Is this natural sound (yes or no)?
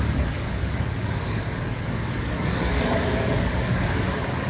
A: no